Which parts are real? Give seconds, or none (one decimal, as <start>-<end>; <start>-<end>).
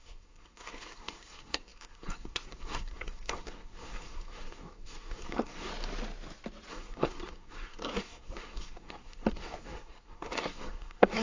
5.7-6.7